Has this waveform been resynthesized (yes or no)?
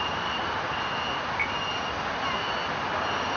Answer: no